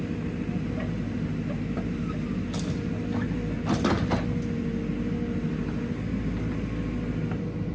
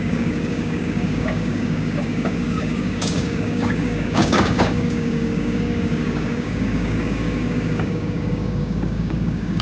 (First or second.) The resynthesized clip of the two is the second